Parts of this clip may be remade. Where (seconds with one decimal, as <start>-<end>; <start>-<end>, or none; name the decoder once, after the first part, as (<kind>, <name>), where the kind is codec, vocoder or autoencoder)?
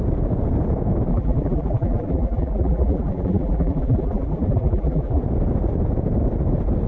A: 1.1-5.2 (vocoder, BigVGAN v2)